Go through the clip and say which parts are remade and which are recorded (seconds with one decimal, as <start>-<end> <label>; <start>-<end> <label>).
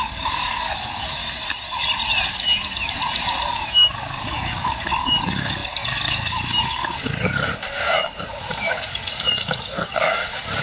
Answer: 0.0-1.2 remade; 1.2-2.3 recorded; 2.3-3.0 remade; 3.0-3.5 recorded; 3.5-10.6 remade